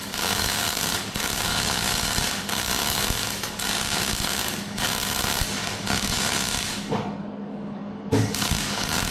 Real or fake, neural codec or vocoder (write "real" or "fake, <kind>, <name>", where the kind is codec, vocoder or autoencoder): fake, codec, DAC